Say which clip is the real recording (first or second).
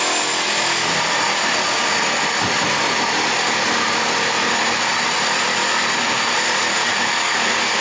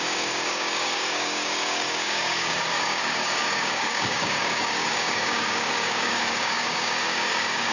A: first